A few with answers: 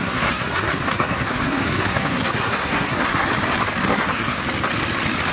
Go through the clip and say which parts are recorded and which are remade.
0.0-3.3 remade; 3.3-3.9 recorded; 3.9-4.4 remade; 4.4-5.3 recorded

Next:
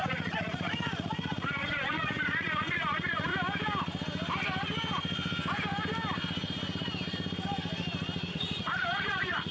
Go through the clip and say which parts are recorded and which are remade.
0.0-3.3 remade; 3.3-8.3 recorded; 8.3-9.5 remade

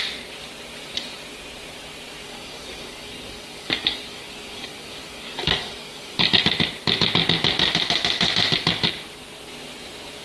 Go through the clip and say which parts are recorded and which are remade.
0.0-2.2 recorded; 2.2-6.4 remade; 6.4-10.2 recorded

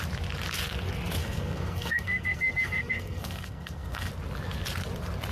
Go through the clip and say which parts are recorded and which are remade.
0.0-1.2 recorded; 1.2-4.1 remade; 4.1-5.3 recorded